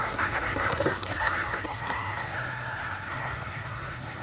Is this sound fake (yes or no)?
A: yes